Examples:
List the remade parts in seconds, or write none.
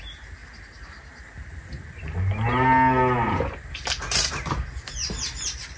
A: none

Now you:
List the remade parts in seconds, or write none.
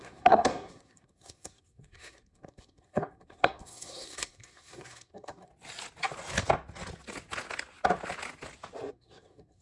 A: 0.0-5.5 (codec, SNAC); 8.9-9.6